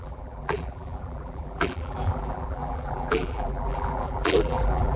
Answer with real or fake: fake